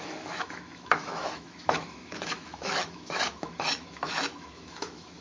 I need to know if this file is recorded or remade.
remade